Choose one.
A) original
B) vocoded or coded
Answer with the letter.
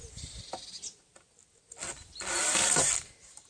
A